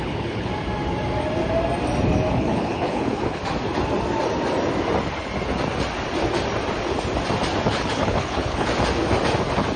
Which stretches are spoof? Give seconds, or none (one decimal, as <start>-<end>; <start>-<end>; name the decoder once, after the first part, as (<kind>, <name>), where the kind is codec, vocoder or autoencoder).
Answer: 0.0-0.5 (codec, HILCodec); 2.3-3.4; 7.7-8.7